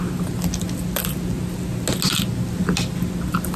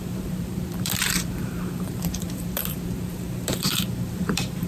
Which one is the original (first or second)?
first